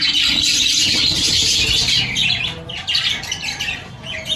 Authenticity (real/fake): real